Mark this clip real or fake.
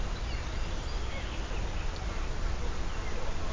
real